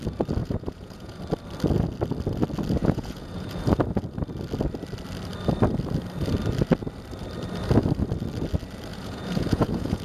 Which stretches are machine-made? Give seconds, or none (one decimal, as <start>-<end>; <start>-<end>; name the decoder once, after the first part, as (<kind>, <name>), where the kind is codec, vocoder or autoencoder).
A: 0.4-1.2 (vocoder, Vocos); 2.8-3.8; 8.9-10.0